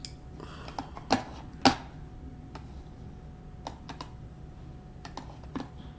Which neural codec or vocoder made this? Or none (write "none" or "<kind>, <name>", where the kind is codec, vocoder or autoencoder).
none